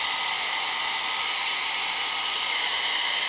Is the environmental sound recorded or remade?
recorded